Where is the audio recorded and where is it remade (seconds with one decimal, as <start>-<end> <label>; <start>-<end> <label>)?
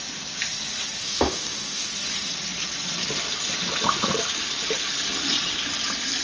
0.0-1.0 recorded; 1.0-1.9 remade; 1.9-6.2 recorded